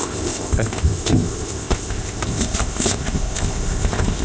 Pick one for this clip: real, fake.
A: fake